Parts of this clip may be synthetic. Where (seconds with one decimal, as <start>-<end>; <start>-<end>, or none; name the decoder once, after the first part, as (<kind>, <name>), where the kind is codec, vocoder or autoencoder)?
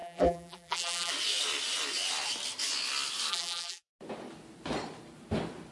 0.0-1.1 (vocoder, BigVGAN v2); 3.3-3.9